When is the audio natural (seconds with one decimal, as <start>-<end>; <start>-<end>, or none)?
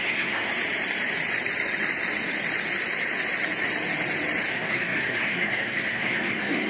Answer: 0.5-4.5